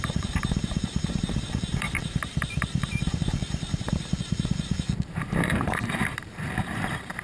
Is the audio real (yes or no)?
no